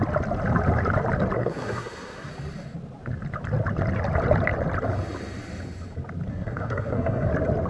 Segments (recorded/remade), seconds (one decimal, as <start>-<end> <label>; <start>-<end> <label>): 0.0-1.4 recorded; 1.4-2.3 remade; 2.3-6.3 recorded; 6.3-7.3 remade; 7.3-7.7 recorded